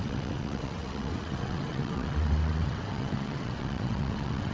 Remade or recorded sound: remade